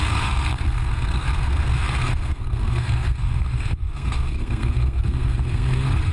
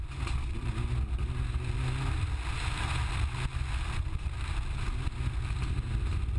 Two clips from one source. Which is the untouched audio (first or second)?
second